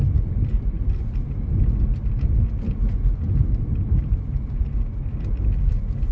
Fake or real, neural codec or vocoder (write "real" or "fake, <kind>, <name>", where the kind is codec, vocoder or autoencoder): real